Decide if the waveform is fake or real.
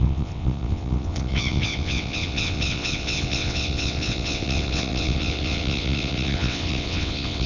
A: fake